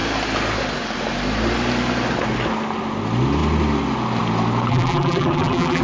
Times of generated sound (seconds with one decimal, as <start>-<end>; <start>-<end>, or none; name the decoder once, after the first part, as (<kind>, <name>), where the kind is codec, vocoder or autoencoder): 4.7-5.8 (vocoder, BigVGAN v2)